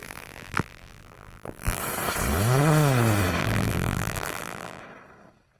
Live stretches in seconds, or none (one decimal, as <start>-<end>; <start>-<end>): 1.8-3.4; 4.8-5.6